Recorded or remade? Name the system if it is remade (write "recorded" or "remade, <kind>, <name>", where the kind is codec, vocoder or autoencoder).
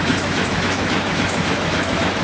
remade, autoencoder, DAC-VAE